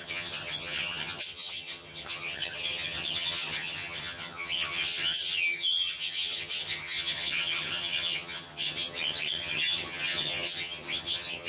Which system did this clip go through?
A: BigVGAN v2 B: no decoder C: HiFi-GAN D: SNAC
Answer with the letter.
C